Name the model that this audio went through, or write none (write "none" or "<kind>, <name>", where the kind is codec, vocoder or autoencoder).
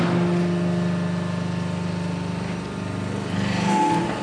none